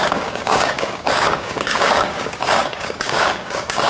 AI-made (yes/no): yes